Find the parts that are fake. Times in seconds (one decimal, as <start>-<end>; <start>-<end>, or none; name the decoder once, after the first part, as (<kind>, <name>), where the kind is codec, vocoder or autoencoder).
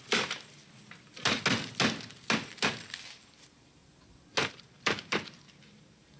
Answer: 0.0-0.6 (vocoder, BigVGAN v2); 3.4-3.8; 4.5-6.2